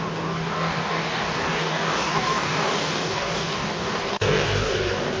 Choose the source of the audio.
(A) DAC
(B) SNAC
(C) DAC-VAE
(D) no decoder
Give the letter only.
A